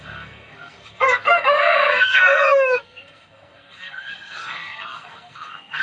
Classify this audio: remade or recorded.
remade